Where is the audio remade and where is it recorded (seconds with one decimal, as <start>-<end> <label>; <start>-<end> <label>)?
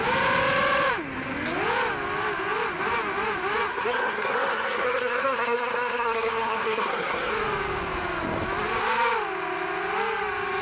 0.0-3.7 recorded; 3.7-7.3 remade; 7.3-10.6 recorded